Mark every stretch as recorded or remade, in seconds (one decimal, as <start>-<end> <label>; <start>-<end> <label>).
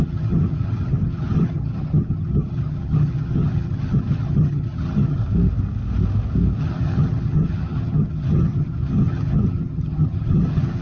0.0-5.2 remade; 5.2-6.6 recorded; 6.6-10.8 remade